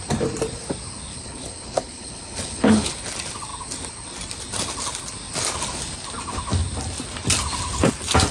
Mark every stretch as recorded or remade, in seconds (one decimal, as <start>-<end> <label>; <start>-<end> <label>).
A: 0.0-1.1 recorded; 1.1-2.9 remade; 2.9-8.3 recorded